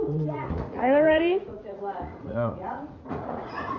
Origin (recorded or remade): remade